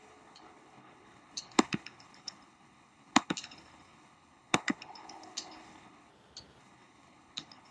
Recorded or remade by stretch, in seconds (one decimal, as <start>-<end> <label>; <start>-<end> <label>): 0.0-6.1 remade; 6.1-6.6 recorded; 6.6-7.7 remade